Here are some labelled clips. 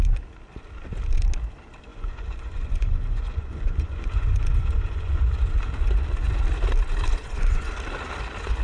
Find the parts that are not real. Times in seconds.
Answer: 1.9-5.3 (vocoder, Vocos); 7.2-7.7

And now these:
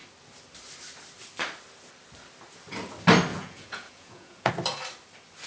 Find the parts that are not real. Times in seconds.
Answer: 3.3-4.5 (vocoder, Vocos)

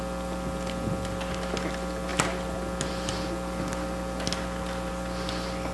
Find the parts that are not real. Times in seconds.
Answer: none

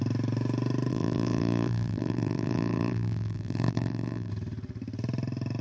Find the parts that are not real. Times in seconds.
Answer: 0.9-4.3 (vocoder, BigVGAN v2)

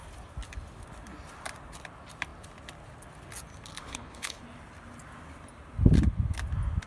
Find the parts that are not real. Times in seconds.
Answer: 3.8-4.4 (codec, HILCodec)

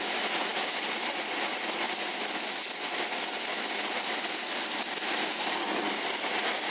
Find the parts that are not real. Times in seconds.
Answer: none

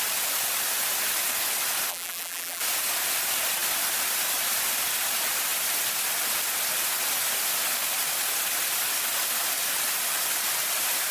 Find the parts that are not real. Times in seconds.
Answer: 1.9-2.6 (vocoder, BigVGAN v2)